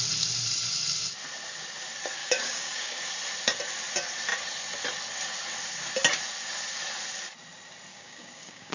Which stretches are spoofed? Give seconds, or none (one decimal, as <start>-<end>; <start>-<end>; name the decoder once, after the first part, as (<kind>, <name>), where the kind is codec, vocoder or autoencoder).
2.2-3.1 (codec, DAC); 7.9-8.7